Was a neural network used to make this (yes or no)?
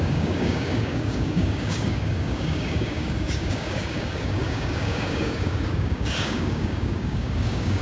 yes